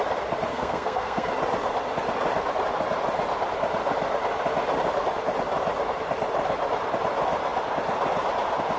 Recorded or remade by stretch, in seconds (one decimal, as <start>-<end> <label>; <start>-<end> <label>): 0.0-0.5 recorded; 0.5-1.3 remade; 1.3-8.8 recorded